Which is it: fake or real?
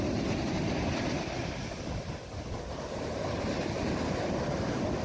real